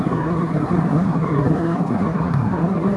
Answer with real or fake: fake